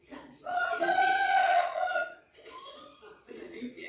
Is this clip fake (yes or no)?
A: yes